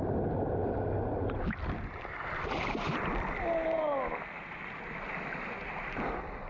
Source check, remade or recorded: recorded